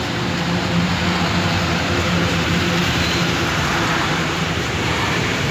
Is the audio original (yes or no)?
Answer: no